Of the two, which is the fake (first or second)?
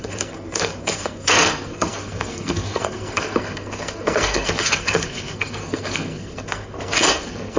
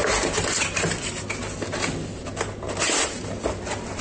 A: first